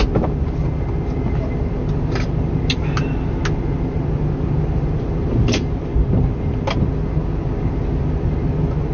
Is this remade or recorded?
recorded